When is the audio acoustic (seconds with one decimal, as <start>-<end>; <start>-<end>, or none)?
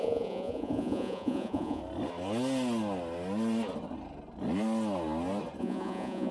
1.8-5.6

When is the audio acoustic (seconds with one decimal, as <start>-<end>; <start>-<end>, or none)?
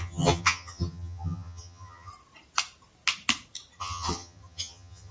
2.1-3.8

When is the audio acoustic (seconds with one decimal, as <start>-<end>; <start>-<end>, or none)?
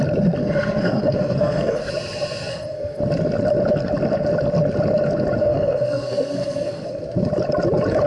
0.0-0.4; 1.8-2.5; 3.0-5.4; 7.0-8.1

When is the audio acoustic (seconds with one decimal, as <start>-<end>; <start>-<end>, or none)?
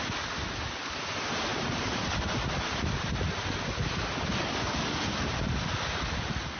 0.0-1.5; 5.5-6.6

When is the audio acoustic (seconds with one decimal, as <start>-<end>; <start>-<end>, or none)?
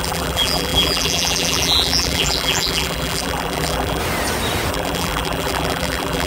4.0-4.7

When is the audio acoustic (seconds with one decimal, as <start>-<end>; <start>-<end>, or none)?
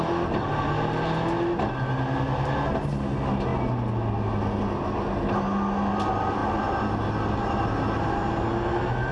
0.0-9.1